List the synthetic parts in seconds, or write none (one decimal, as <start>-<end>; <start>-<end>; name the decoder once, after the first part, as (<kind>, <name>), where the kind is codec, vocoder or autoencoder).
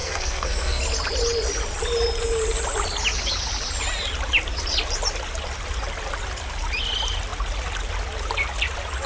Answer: 0.0-0.8 (codec, SNAC)